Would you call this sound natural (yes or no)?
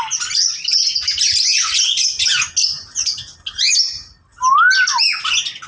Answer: yes